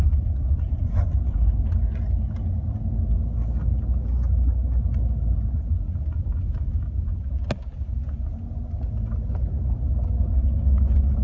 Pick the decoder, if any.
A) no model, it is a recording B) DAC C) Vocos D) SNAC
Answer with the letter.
A